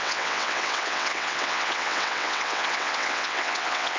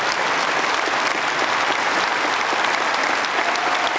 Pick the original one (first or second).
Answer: second